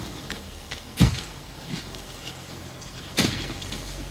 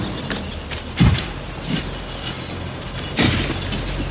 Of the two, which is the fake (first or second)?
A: first